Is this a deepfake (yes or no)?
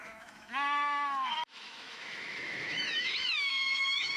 yes